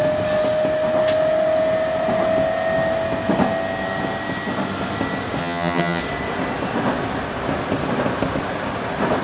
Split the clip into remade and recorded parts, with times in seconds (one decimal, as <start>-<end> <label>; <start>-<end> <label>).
0.0-5.4 recorded; 5.4-6.0 remade; 6.0-9.2 recorded